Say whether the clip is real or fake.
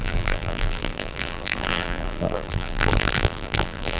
fake